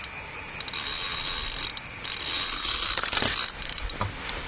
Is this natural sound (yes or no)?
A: yes